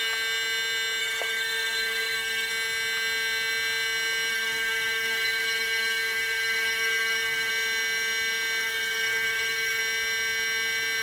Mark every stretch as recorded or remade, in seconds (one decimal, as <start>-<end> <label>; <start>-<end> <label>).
0.0-1.0 recorded; 1.0-2.5 remade; 2.5-4.3 recorded; 4.3-7.5 remade; 7.5-8.6 recorded; 8.6-9.8 remade; 9.8-11.0 recorded